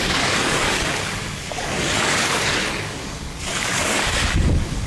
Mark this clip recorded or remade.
remade